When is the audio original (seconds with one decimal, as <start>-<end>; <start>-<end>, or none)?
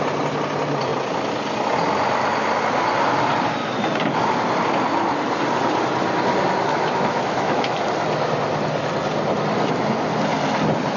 0.0-6.7; 7.8-11.0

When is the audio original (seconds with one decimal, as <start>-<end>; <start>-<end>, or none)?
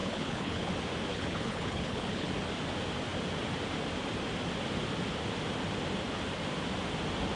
0.7-1.1; 2.3-7.4